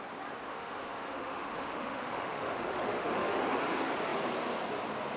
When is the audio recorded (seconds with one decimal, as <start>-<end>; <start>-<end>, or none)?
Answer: 0.0-0.5; 3.6-5.2